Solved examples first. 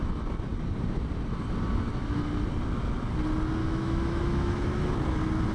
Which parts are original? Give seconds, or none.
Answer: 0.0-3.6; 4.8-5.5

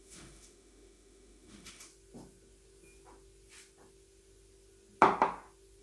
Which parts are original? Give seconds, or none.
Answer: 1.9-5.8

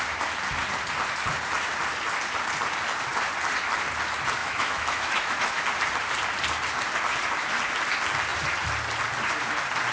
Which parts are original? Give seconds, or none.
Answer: 0.0-4.4; 5.6-9.9